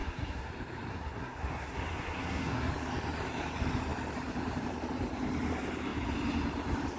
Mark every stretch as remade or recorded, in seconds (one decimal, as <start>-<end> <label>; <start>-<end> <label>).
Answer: 0.0-0.5 remade; 0.5-0.9 recorded; 0.9-2.7 remade; 2.7-7.0 recorded